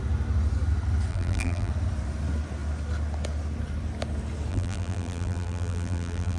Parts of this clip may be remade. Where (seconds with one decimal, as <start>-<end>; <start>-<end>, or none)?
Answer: 1.1-1.7; 4.5-6.4